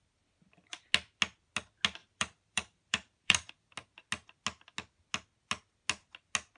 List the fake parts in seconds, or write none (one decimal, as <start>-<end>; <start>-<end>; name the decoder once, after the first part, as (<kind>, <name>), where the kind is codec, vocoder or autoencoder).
2.0-3.5 (vocoder, BigVGAN v2)